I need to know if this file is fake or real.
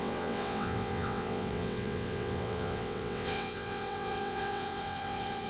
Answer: fake